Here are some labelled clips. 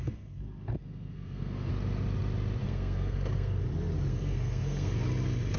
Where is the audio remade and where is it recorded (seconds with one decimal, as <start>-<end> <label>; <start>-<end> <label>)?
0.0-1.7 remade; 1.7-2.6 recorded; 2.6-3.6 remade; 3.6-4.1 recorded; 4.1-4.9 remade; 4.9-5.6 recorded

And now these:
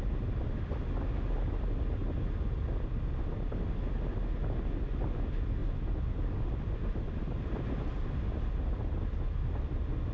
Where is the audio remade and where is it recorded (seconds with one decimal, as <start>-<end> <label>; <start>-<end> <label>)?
0.0-10.1 recorded

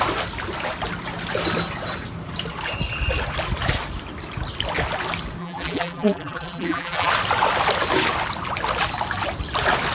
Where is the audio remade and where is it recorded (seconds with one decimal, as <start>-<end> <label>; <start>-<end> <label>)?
0.0-5.4 recorded; 5.4-7.1 remade; 7.1-9.9 recorded

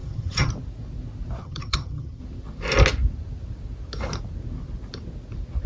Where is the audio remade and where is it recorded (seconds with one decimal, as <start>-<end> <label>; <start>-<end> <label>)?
0.0-0.5 remade; 0.5-1.4 recorded; 1.4-2.2 remade; 2.2-5.7 recorded

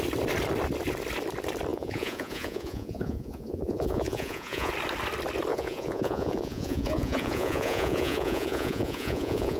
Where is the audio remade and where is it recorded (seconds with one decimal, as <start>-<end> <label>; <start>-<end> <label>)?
0.0-1.7 recorded; 1.7-4.7 remade; 4.7-5.5 recorded; 5.5-9.6 remade